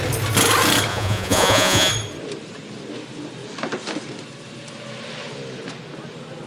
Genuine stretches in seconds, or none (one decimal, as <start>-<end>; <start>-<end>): 0.0-0.9; 1.9-6.5